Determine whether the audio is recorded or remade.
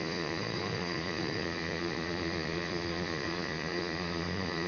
remade